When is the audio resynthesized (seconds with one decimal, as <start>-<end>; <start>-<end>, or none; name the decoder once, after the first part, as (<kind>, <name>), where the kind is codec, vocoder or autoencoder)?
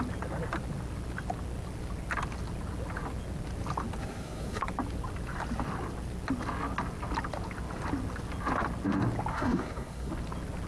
4.0-4.6 (codec, SNAC); 9.3-10.1